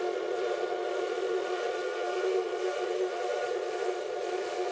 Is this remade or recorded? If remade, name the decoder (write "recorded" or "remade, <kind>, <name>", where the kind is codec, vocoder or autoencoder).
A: remade, vocoder, Vocos